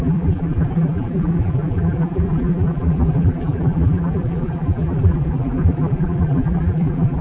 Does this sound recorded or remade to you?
remade